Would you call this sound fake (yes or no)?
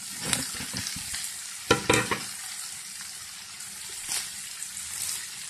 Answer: no